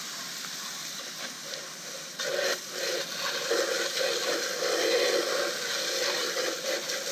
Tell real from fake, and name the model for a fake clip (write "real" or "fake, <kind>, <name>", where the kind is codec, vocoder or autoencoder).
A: real